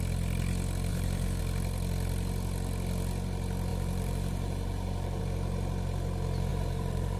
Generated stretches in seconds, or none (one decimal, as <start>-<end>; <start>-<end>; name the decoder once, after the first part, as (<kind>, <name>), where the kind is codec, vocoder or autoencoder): 0.9-1.4 (vocoder, BigVGAN v2); 3.7-5.2; 6.5-7.2